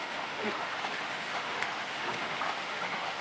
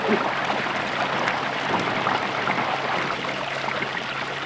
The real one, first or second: second